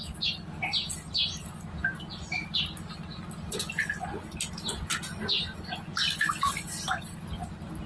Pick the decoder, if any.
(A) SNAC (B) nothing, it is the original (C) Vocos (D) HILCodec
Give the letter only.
B